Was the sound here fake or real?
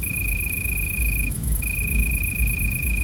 fake